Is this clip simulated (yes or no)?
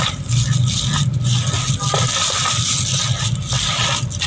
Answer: no